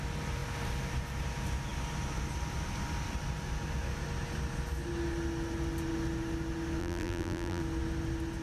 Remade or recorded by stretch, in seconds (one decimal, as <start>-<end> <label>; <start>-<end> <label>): 0.0-6.8 recorded; 6.8-7.6 remade; 7.6-8.4 recorded